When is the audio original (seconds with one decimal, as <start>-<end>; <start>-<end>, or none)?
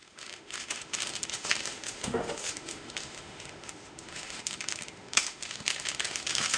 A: none